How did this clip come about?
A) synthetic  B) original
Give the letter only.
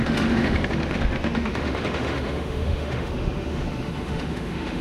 A